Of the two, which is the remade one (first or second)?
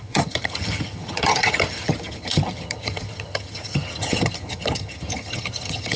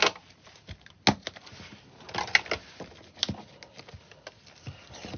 first